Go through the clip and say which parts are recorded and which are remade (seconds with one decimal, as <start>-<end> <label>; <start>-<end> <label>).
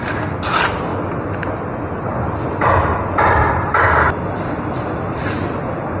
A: 0.0-6.0 recorded